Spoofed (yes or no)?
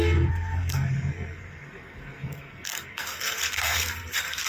yes